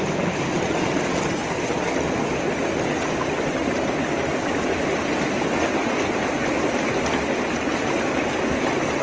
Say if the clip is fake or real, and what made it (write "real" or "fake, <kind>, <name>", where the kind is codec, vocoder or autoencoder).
real